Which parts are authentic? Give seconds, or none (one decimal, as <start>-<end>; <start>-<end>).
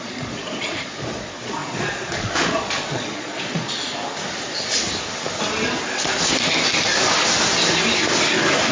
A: 3.8-8.7